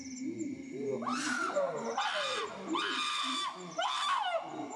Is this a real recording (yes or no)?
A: yes